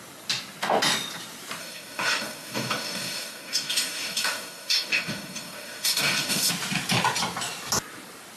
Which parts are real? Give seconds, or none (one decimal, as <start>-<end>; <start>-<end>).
0.0-1.6; 6.5-8.4